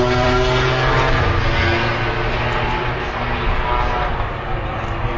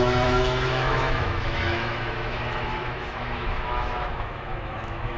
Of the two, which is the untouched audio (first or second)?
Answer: first